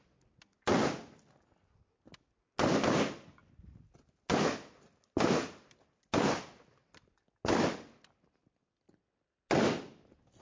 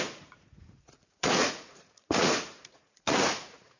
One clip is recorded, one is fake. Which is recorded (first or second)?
first